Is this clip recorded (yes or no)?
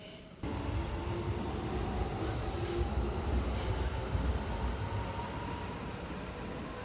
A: yes